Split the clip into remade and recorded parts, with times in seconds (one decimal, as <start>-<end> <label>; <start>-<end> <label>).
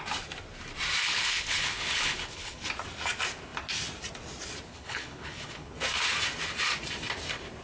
0.0-1.0 recorded; 1.0-2.7 remade; 2.7-4.7 recorded; 4.7-5.7 remade; 5.7-7.6 recorded